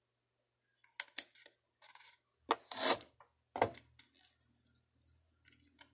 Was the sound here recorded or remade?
recorded